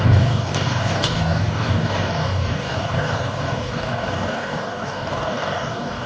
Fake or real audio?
fake